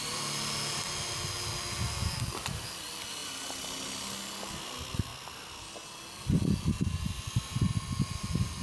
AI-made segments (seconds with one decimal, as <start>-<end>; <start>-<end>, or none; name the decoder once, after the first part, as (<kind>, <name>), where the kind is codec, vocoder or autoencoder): none